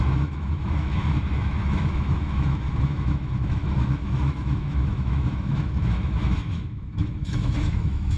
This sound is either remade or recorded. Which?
remade